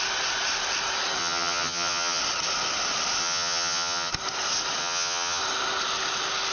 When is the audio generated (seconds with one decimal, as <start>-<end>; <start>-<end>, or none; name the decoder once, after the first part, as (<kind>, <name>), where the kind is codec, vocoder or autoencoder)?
1.2-2.2 (vocoder, HiFi-GAN); 3.2-4.1; 4.8-5.4